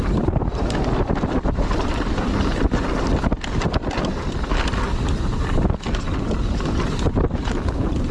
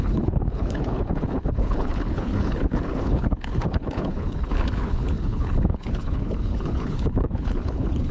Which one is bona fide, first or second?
first